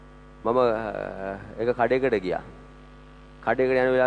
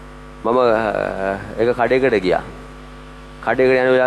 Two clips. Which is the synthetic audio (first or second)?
second